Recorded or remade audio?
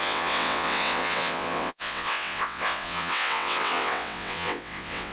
remade